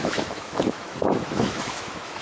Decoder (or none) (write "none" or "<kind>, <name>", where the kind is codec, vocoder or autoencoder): autoencoder, DAC-VAE